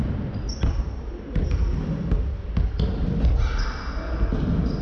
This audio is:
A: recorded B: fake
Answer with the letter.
A